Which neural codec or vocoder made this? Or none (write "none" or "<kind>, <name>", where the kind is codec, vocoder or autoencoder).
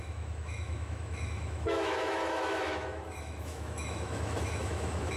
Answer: autoencoder, DAC-VAE